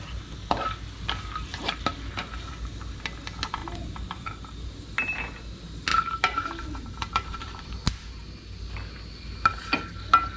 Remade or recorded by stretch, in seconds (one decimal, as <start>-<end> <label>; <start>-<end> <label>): 0.0-1.5 recorded; 1.5-2.5 remade; 2.5-3.6 recorded; 3.6-4.7 remade; 4.7-5.9 recorded; 5.9-7.7 remade; 7.7-10.4 recorded